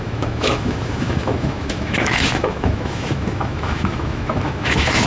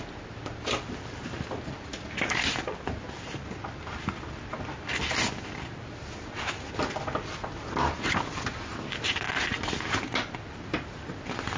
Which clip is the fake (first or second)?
first